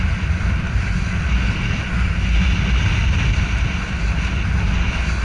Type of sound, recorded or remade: recorded